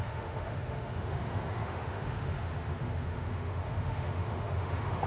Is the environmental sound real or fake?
fake